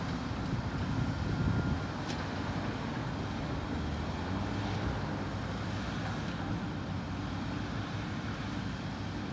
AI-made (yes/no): no